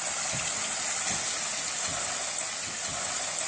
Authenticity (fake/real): real